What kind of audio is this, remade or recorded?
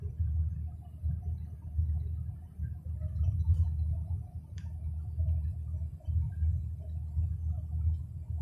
recorded